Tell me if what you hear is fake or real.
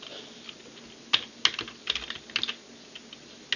real